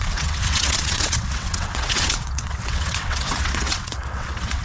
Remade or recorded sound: remade